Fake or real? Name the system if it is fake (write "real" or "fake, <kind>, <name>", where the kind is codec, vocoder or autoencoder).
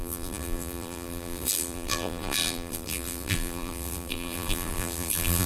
fake, vocoder, BigVGAN v2